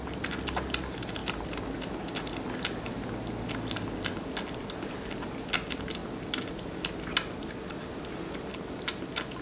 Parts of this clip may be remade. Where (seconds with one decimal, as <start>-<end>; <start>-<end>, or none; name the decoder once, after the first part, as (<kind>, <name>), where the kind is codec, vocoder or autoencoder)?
none